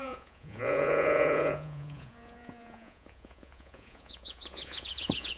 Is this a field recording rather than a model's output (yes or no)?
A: no